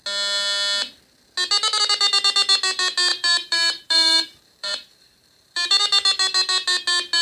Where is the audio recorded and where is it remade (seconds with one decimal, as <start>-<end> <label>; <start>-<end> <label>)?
0.0-3.1 recorded; 3.1-5.8 remade; 5.8-7.2 recorded